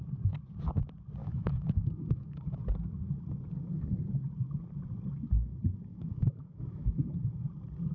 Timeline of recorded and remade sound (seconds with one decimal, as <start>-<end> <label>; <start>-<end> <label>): 0.0-1.2 recorded; 1.2-2.6 remade; 2.6-5.9 recorded; 5.9-7.1 remade; 7.1-7.9 recorded